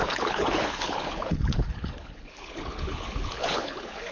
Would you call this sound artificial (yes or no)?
yes